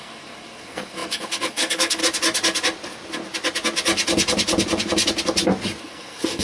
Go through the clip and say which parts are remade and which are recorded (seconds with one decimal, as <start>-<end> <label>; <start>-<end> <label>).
0.0-2.0 remade; 2.0-5.8 recorded; 5.8-6.4 remade